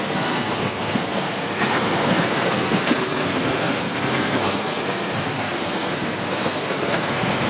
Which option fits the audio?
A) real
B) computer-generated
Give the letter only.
B